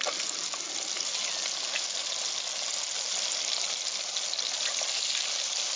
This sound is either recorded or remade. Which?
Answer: recorded